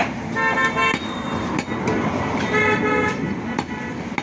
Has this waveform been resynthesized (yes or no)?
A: no